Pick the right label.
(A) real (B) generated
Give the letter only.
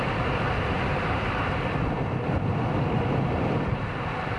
B